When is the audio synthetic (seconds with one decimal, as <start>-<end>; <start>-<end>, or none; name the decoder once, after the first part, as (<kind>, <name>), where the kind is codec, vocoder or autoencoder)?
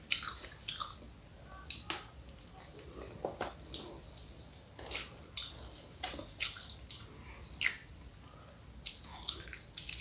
none